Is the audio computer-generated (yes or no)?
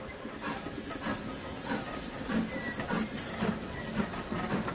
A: no